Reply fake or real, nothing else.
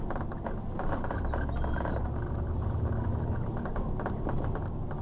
real